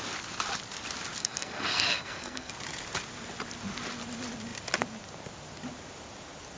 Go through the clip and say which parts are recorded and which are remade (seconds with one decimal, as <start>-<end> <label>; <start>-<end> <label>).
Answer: 0.0-1.2 recorded; 1.2-2.5 remade; 2.5-6.6 recorded